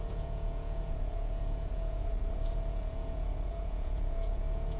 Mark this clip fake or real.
fake